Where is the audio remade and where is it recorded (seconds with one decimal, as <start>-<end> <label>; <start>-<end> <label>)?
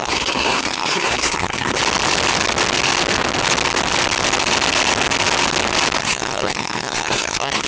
0.0-1.8 remade; 1.8-6.0 recorded; 6.0-7.7 remade